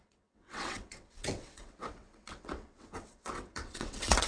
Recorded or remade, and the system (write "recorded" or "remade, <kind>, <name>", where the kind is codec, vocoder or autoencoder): remade, vocoder, WaveNeXt